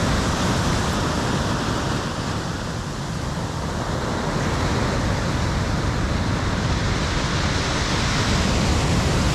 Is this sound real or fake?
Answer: real